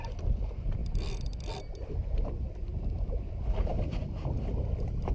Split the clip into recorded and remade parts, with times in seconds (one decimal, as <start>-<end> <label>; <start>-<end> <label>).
0.0-2.6 recorded; 2.6-3.3 remade; 3.3-5.1 recorded